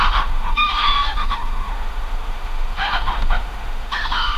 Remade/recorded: remade